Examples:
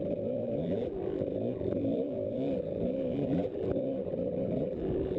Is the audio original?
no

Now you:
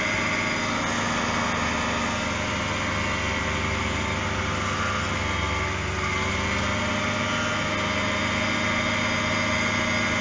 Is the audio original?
yes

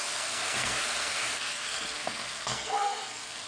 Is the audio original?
no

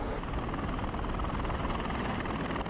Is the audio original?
yes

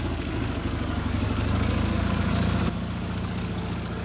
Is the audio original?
no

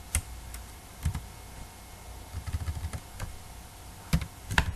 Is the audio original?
yes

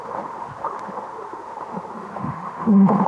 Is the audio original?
no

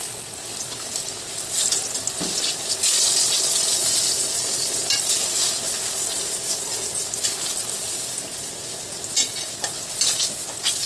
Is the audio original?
yes